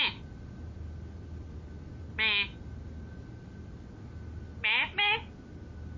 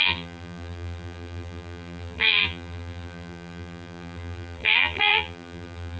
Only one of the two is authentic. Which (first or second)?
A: first